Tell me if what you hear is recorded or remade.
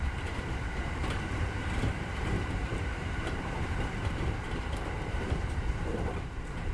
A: remade